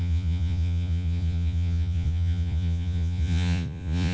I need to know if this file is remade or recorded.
remade